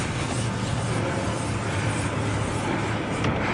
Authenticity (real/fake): real